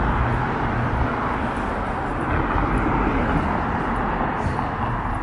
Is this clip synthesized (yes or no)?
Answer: no